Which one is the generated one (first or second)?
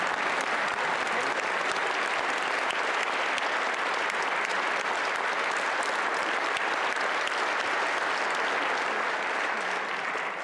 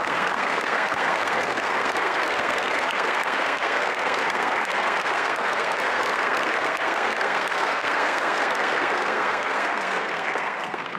second